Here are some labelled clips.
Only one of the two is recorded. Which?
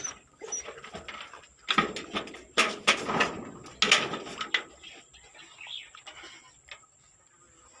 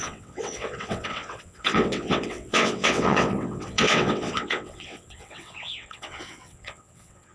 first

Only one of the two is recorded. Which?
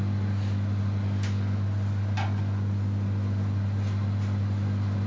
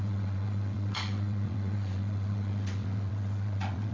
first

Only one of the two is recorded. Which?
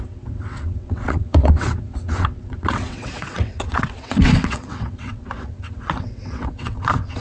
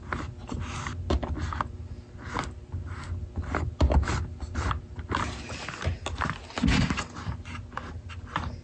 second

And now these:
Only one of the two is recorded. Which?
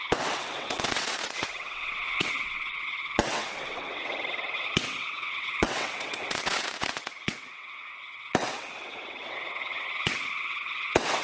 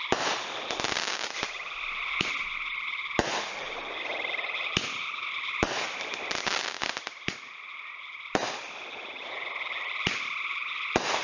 second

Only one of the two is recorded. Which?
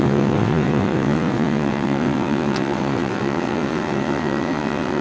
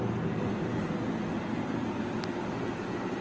second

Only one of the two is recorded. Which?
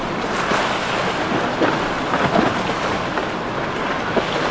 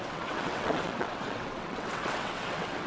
first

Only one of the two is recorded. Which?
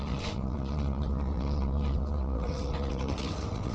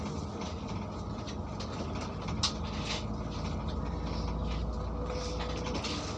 second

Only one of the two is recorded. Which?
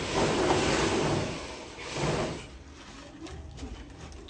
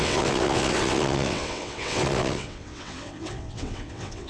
first